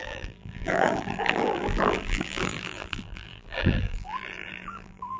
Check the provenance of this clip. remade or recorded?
remade